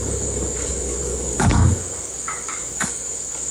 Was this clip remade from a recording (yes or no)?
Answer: yes